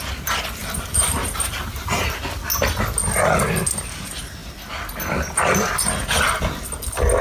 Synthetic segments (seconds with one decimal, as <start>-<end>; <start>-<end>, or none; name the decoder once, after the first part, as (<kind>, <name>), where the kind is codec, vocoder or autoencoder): 0.6-2.0 (vocoder, BigVGAN v2)